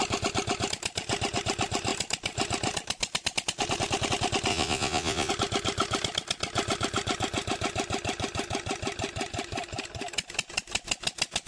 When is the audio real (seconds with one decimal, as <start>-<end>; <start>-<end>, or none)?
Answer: 0.0-4.5; 5.3-11.5